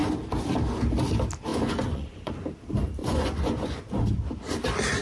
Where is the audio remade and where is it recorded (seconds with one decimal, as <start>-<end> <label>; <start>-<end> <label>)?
0.0-1.5 recorded; 1.5-2.3 remade; 2.3-3.0 recorded; 3.0-3.8 remade; 3.8-5.0 recorded